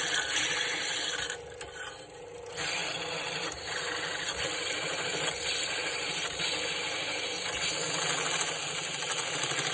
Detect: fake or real real